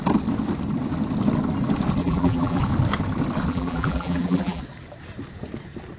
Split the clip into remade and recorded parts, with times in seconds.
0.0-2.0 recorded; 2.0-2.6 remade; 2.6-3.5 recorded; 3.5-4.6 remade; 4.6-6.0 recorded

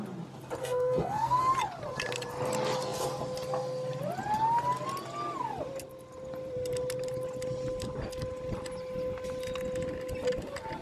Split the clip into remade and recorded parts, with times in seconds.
0.0-0.6 recorded; 0.6-1.4 remade; 1.4-10.8 recorded